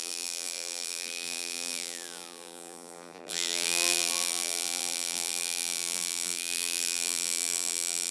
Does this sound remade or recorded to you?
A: remade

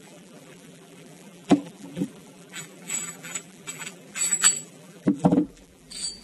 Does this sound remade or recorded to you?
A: remade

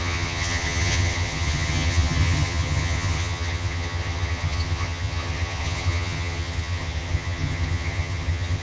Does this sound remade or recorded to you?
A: remade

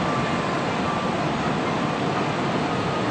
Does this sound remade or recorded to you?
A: recorded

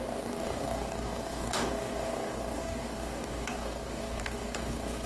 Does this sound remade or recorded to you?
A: remade